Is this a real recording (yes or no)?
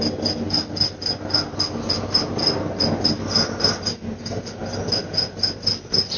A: yes